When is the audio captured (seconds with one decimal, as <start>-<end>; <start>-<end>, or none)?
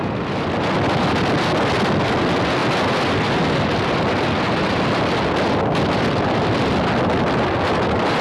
0.0-8.2